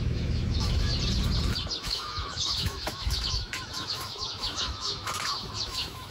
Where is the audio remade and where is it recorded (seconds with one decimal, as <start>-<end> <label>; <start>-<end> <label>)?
0.0-0.9 remade; 0.9-1.8 recorded; 1.8-6.1 remade